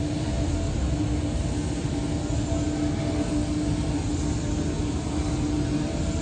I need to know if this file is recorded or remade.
recorded